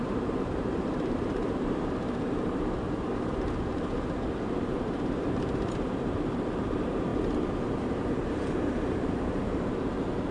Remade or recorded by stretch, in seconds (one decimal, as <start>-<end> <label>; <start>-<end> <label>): 0.0-7.1 remade; 7.1-7.7 recorded; 7.7-10.3 remade